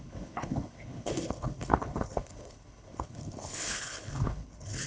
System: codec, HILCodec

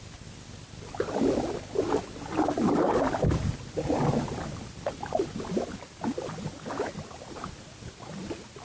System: none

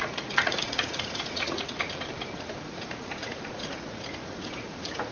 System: vocoder, Vocos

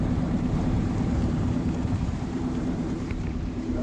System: vocoder, BigVGAN v2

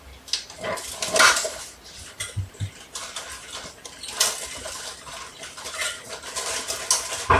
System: none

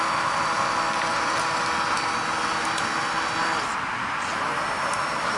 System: none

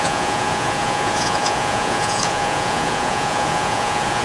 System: vocoder, Vocos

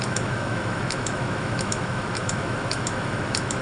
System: autoencoder, DAC-VAE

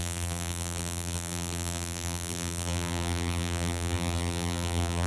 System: vocoder, BigVGAN v2